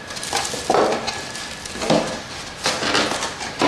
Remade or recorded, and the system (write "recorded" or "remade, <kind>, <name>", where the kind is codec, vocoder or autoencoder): recorded